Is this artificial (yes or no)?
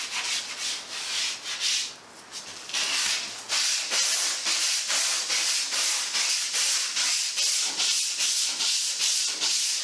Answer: no